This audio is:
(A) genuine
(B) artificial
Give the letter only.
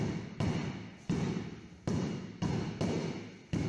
A